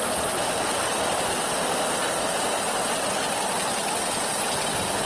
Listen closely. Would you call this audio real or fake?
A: real